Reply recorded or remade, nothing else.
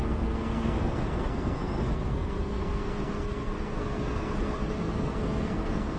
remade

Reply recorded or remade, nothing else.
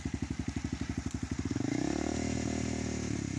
recorded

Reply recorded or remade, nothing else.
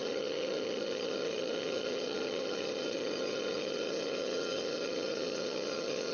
remade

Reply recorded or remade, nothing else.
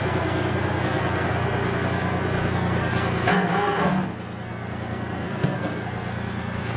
remade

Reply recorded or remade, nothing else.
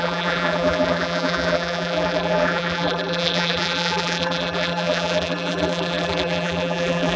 remade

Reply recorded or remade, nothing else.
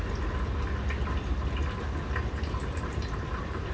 recorded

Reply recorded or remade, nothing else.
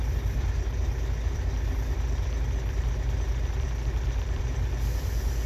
remade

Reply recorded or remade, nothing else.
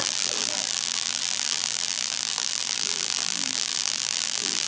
remade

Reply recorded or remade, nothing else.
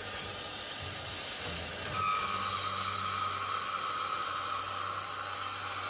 recorded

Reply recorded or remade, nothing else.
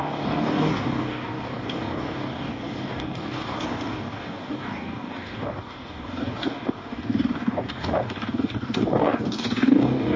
remade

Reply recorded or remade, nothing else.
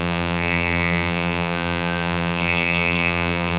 remade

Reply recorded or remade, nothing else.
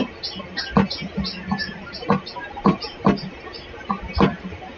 recorded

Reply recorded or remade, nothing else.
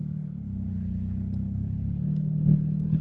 remade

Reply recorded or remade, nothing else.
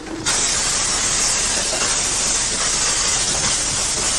recorded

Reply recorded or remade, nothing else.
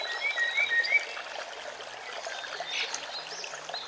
recorded